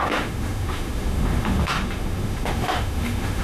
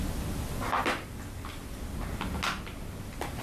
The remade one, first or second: first